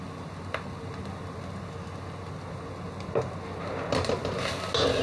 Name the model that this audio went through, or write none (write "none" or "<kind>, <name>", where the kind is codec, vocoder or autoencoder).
none